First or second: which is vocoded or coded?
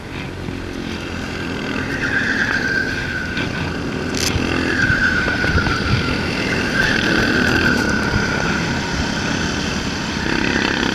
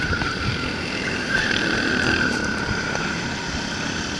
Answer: second